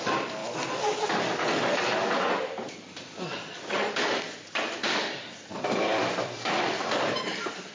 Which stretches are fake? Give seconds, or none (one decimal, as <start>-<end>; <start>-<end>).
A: 0.0-7.7